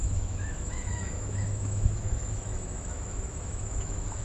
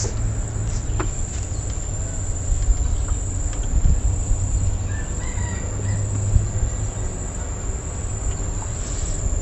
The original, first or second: second